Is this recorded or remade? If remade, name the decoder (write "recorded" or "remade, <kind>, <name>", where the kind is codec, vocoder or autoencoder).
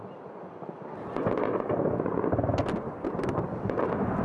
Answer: recorded